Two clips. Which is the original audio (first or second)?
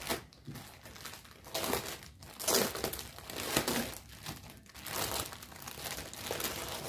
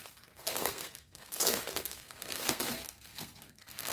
first